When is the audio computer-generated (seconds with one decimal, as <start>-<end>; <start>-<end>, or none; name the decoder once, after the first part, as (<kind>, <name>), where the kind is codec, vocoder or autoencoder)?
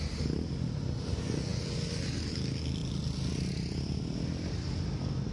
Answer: none